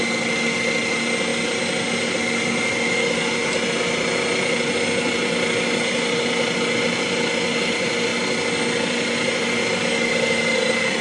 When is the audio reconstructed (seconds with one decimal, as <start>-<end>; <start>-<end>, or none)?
none